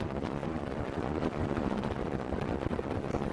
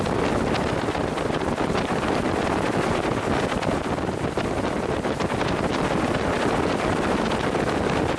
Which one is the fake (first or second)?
first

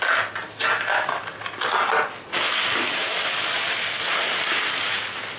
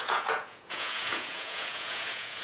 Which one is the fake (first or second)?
second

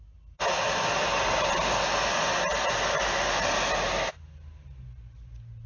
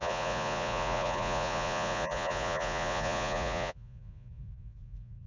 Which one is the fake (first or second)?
second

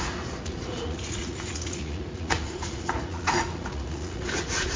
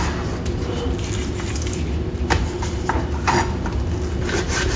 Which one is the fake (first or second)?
first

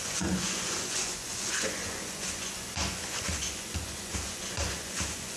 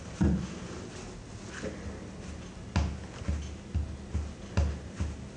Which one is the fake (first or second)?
first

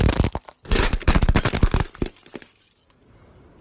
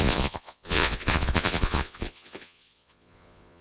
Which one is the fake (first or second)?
second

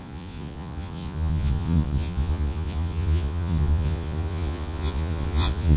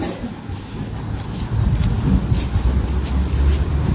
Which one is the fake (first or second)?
first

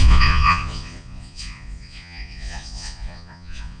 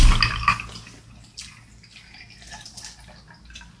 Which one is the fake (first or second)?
first